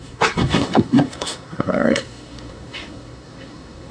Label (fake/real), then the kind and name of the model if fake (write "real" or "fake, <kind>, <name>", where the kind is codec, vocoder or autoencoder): fake, codec, SNAC